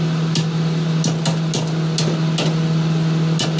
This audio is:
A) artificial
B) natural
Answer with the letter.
B